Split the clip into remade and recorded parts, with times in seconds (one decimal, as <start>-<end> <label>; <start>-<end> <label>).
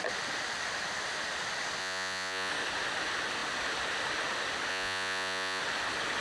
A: 0.0-1.8 recorded; 1.8-2.5 remade; 2.5-4.7 recorded; 4.7-5.6 remade; 5.6-6.2 recorded